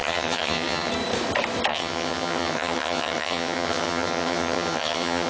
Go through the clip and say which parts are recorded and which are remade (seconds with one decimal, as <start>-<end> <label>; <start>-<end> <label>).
0.0-0.9 remade; 0.9-1.7 recorded; 1.7-5.3 remade